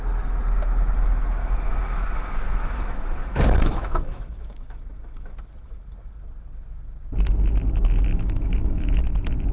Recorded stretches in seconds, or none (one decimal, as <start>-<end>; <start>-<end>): 0.0-1.4; 6.1-8.1; 9.0-9.5